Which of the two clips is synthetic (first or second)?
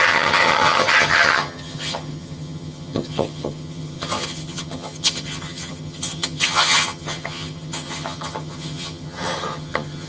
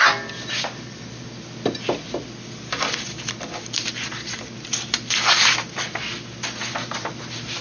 first